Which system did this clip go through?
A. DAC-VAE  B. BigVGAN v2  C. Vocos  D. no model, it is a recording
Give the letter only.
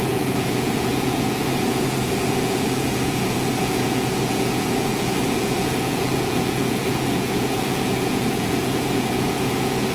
C